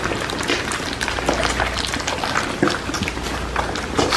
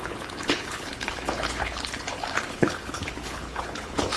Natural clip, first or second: first